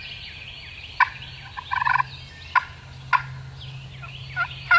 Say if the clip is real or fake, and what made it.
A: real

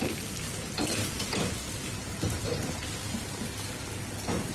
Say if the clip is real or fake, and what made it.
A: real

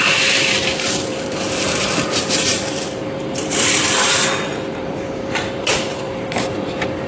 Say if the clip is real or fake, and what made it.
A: fake, vocoder, BigVGAN v2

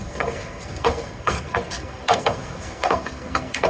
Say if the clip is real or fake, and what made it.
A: fake, codec, SNAC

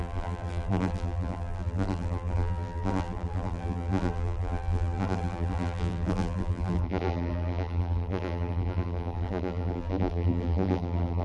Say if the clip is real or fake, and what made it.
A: fake, vocoder, BigVGAN v2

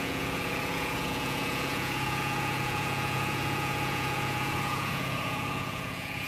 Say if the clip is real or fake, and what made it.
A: fake, vocoder, Vocos